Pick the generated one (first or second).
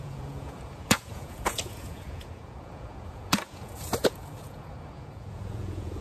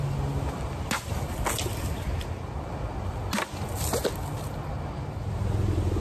first